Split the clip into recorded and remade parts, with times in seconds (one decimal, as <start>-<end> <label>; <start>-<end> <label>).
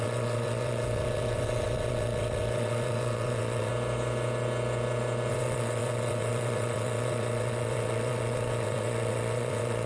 0.0-3.7 remade; 3.7-5.3 recorded; 5.3-9.9 remade